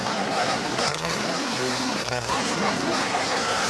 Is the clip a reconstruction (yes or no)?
yes